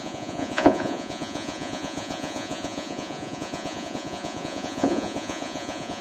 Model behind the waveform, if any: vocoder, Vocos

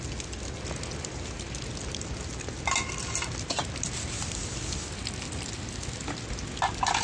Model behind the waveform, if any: none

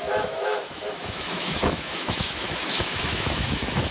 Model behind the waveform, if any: autoencoder, DAC-VAE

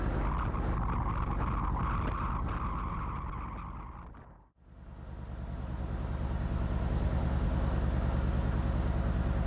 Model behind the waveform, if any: none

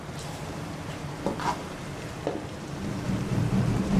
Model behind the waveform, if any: vocoder, BigVGAN v2